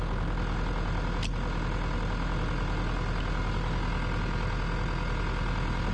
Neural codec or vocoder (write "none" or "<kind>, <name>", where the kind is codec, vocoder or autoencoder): none